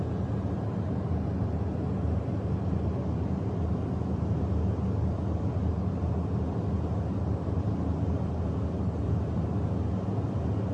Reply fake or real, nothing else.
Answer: real